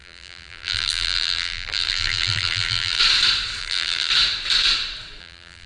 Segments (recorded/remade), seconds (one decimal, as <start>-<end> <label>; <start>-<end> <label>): 0.0-3.0 remade; 3.0-3.6 recorded; 3.6-4.1 remade; 4.1-5.2 recorded; 5.2-5.7 remade